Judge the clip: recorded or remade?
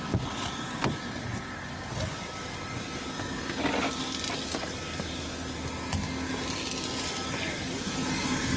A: recorded